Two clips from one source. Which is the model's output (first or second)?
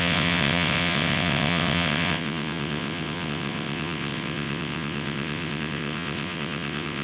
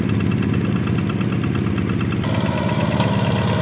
first